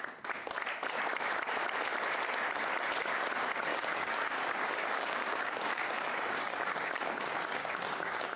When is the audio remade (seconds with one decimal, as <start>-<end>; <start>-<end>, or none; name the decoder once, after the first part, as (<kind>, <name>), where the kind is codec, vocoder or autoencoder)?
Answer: 3.7-8.4 (codec, DAC)